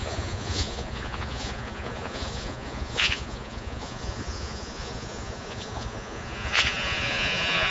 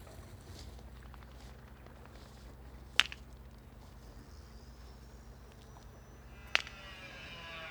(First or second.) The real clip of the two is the second